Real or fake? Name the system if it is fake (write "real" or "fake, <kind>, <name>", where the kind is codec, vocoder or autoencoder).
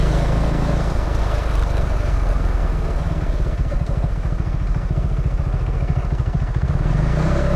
fake, codec, SNAC